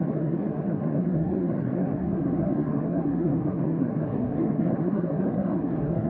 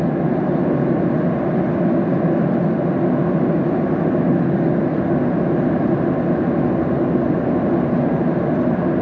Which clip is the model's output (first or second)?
first